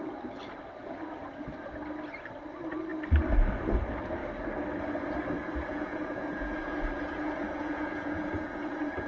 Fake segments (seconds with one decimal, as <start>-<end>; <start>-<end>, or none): 5.7-9.1